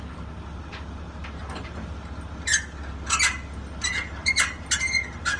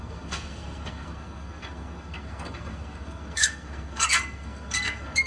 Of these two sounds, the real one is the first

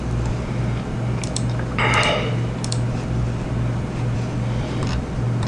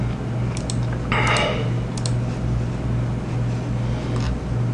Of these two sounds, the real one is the second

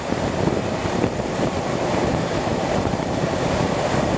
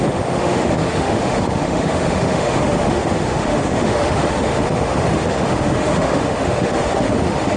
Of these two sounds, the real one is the first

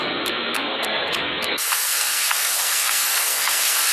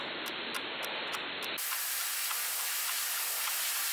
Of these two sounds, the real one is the second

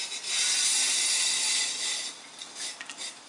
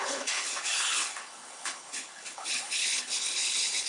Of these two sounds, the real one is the first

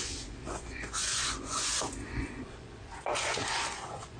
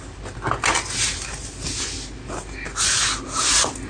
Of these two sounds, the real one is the second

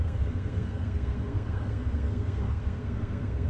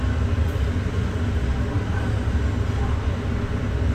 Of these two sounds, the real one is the second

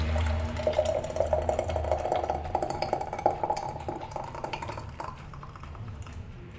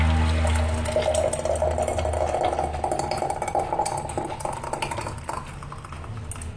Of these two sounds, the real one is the second